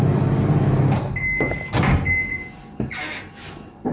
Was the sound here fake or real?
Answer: real